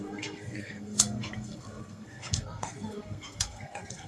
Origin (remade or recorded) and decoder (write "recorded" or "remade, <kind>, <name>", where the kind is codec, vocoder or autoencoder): remade, codec, SNAC